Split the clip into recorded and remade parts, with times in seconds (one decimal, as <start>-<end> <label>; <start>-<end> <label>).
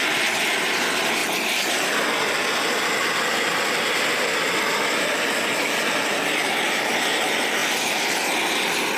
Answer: 0.0-9.0 recorded